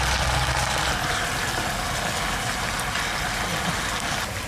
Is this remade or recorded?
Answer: recorded